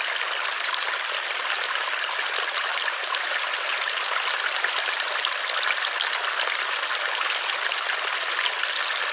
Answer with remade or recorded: recorded